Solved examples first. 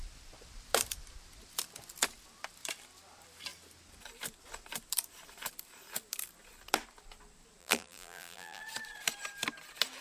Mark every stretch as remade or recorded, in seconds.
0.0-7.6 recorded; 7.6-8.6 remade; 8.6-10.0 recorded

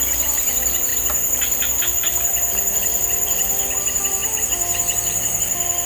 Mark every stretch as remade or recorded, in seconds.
0.0-5.9 recorded

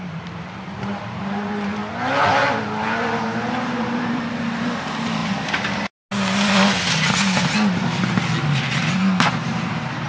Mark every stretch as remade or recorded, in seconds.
0.0-1.8 remade; 1.8-3.5 recorded; 3.5-5.2 remade; 5.2-9.3 recorded; 9.3-10.1 remade

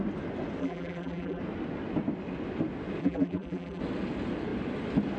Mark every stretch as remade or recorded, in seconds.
0.0-0.6 recorded; 0.6-1.4 remade; 1.4-3.0 recorded; 3.0-3.8 remade; 3.8-5.2 recorded

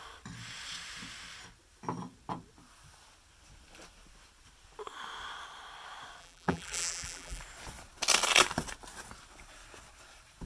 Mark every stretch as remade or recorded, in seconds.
0.0-6.2 recorded; 6.2-7.4 remade; 7.4-10.5 recorded

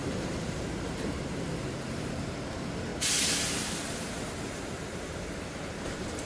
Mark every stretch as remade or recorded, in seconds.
0.0-2.9 remade; 2.9-5.0 recorded; 5.0-6.3 remade